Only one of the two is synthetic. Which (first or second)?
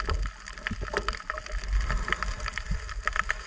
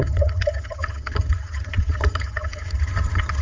second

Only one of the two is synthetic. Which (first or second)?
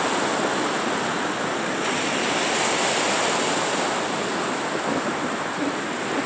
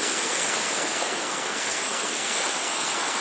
second